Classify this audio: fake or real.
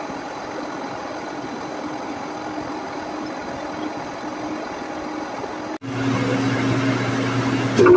real